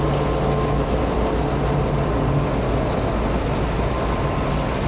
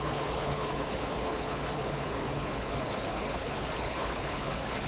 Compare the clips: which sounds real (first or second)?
first